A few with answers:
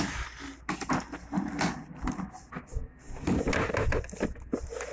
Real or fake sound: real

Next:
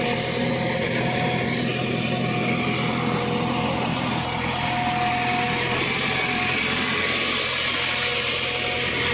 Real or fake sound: real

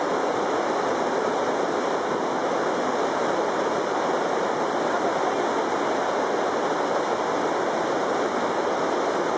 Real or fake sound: real